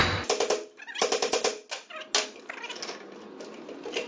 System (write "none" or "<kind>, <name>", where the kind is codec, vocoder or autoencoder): none